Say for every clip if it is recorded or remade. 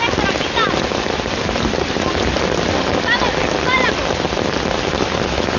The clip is recorded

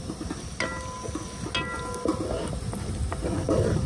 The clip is recorded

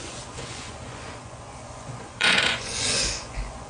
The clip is remade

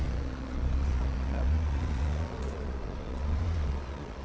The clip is remade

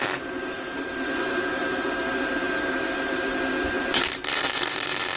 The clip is remade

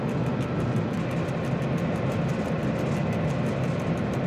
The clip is recorded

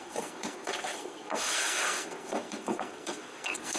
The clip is remade